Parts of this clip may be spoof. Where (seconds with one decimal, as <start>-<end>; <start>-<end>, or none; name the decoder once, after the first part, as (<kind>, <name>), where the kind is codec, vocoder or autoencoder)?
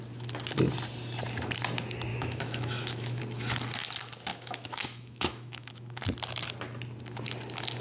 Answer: 2.1-3.2 (autoencoder, DAC-VAE); 4.3-6.0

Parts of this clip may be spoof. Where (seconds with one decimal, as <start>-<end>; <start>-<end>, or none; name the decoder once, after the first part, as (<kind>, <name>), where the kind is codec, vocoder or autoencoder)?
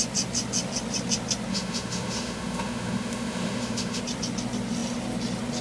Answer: 1.5-4.0 (autoencoder, DAC-VAE)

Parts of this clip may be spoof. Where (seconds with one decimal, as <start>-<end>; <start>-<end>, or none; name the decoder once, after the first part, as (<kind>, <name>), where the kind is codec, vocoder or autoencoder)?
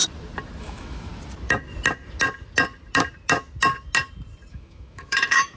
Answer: 0.6-1.1 (autoencoder, DAC-VAE); 4.5-5.6